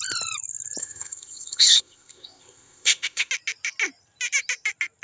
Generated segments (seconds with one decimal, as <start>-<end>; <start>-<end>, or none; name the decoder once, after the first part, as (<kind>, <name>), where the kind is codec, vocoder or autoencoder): 0.8-3.3 (codec, ZipCodec)